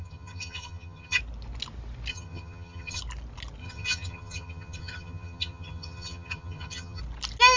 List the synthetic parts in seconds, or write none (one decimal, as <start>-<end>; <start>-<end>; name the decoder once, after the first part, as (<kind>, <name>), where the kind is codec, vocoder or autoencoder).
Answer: 0.0-1.2 (vocoder, HiFi-GAN); 2.1-3.0; 3.6-7.0